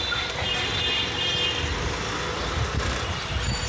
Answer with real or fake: real